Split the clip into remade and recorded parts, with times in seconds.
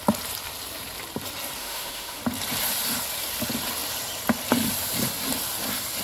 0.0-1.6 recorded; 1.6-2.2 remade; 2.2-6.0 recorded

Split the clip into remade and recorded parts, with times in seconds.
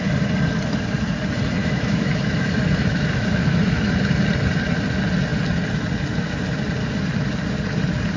0.0-1.6 recorded; 1.6-3.9 remade; 3.9-8.2 recorded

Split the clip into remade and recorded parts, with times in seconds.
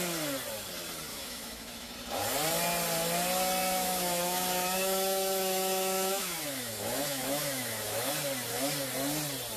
0.0-1.1 recorded; 1.1-1.9 remade; 1.9-3.6 recorded; 3.6-8.1 remade; 8.1-9.6 recorded